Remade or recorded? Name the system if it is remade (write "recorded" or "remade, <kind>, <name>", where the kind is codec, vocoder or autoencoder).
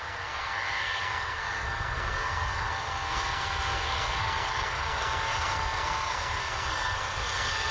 remade, codec, SNAC